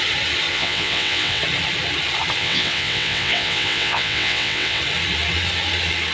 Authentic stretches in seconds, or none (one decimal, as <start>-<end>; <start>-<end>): 0.0-0.5; 1.4-2.4; 4.8-6.1

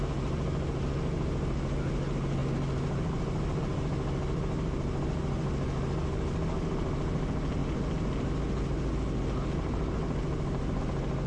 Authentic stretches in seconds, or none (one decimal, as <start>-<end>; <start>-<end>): 0.0-11.3

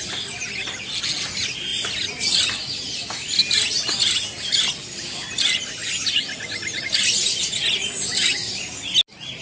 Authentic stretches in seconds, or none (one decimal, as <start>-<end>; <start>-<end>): 0.0-9.4

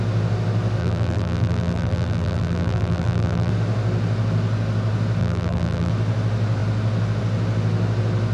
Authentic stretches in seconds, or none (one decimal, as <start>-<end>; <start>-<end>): 0.0-0.8; 3.5-5.2; 5.9-8.3

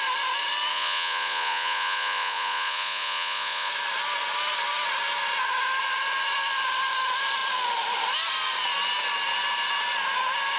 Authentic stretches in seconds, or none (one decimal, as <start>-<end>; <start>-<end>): 0.0-0.7; 3.7-10.6